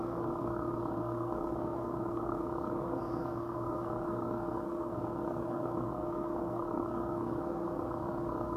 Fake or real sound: fake